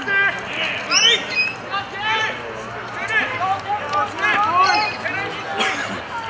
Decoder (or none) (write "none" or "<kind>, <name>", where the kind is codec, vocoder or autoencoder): none